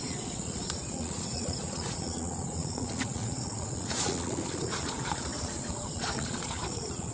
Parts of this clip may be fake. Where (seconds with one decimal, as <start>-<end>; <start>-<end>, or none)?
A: 0.0-7.1